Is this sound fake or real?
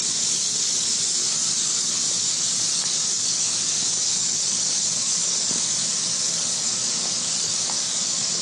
fake